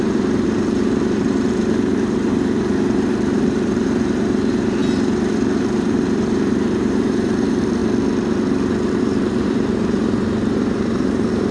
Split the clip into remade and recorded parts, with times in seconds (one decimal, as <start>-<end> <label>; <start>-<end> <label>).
0.0-4.8 remade; 4.8-5.6 recorded; 5.6-7.8 remade; 7.8-9.0 recorded; 9.0-11.5 remade